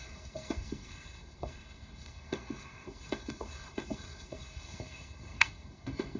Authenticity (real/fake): fake